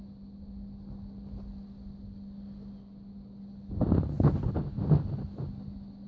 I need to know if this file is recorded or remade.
recorded